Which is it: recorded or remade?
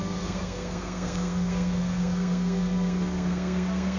remade